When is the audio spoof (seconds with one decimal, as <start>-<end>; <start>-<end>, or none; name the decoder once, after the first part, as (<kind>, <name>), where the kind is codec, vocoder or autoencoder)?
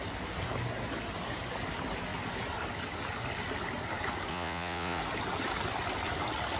4.3-5.0 (vocoder, Vocos)